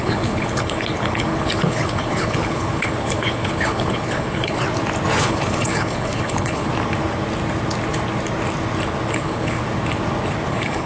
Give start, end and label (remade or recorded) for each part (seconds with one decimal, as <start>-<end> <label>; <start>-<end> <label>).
0.0-4.6 remade; 4.6-5.2 recorded; 5.2-6.7 remade; 6.7-9.1 recorded; 9.1-9.6 remade; 9.6-10.5 recorded; 10.5-10.9 remade